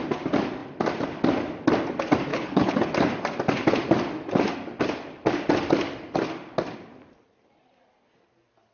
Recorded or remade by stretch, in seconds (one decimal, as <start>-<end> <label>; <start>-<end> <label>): 0.0-2.3 recorded; 2.3-2.9 remade; 2.9-8.7 recorded